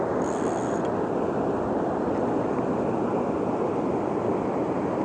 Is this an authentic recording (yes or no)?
yes